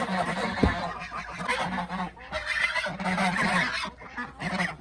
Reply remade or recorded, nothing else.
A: recorded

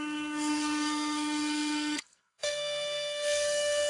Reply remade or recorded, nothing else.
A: remade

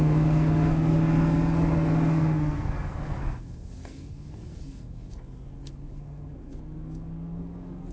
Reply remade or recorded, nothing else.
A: remade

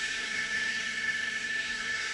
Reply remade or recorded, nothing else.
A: remade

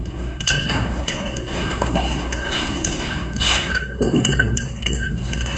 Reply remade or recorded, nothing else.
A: remade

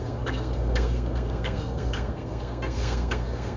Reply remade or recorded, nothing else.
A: remade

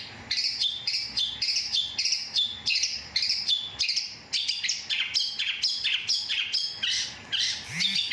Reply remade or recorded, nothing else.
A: recorded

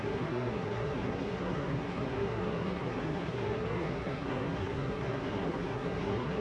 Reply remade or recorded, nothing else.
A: remade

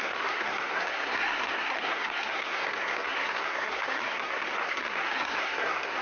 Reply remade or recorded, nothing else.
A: remade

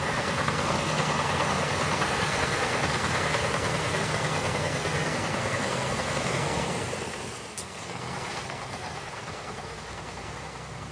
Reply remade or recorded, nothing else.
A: remade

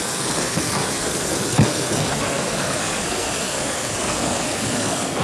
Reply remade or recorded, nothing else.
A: remade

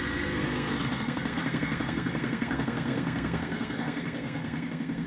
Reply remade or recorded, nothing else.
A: remade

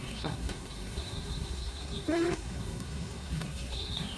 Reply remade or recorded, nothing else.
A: remade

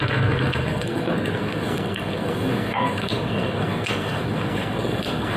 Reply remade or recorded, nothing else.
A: remade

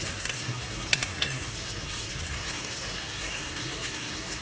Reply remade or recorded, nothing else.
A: remade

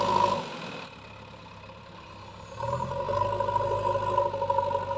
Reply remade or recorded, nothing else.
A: recorded